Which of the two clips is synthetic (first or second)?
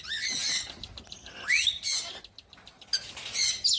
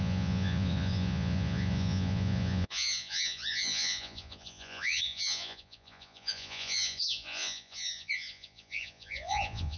second